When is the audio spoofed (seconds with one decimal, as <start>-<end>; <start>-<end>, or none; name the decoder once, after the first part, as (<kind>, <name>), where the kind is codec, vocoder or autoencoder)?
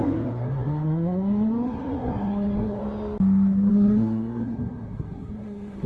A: 0.0-2.8 (codec, SNAC); 3.7-5.9